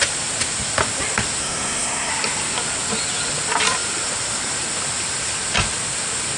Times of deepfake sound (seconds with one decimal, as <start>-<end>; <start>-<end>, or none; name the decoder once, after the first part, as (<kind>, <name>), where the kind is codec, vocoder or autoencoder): 1.4-2.1 (codec, SNAC)